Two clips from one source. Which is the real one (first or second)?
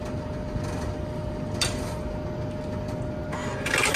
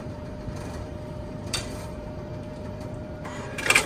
first